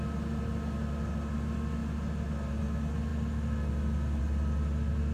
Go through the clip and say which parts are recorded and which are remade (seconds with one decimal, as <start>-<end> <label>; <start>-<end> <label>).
0.0-5.1 recorded